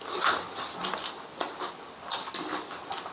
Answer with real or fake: real